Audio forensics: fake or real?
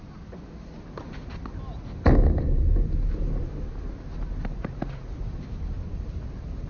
real